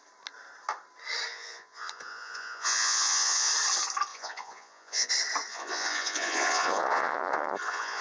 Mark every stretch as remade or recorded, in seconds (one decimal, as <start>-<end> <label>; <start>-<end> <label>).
0.0-1.3 recorded; 1.3-3.5 remade; 3.5-4.1 recorded; 4.1-5.1 remade; 5.1-5.5 recorded; 5.5-8.0 remade